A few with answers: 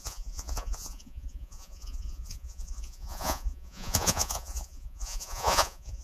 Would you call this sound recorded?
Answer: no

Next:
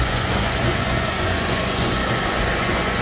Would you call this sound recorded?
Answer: no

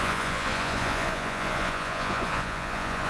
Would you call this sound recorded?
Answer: no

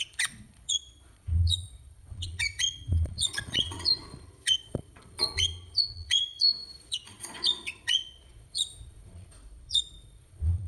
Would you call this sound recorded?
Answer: no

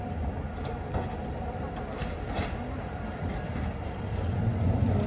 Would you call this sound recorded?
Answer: yes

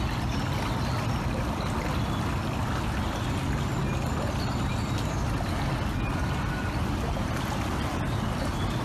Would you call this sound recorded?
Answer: yes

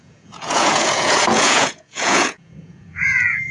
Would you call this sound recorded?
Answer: no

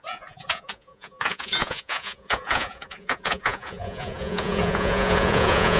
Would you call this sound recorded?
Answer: no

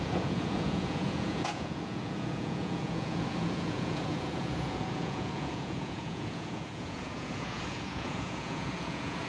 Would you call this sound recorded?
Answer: no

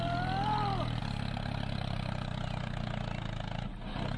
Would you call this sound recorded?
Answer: yes